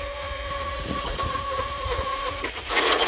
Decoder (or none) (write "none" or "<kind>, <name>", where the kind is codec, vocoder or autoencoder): vocoder, Vocos